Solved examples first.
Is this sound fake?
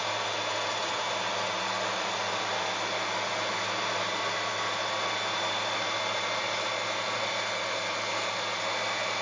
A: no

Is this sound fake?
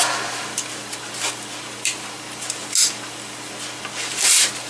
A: no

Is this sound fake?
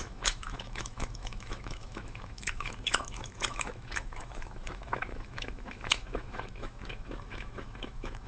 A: yes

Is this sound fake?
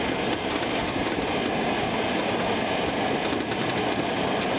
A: no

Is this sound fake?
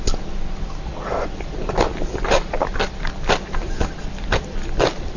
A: no